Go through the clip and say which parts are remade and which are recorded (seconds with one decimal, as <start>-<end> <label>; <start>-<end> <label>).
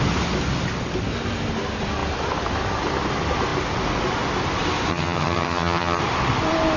0.0-4.9 recorded; 4.9-6.0 remade; 6.0-6.8 recorded